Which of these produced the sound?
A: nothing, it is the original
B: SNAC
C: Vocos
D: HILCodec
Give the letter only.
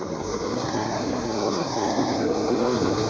B